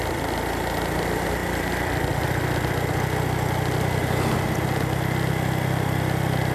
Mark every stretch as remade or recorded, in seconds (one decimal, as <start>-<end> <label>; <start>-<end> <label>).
0.0-6.5 recorded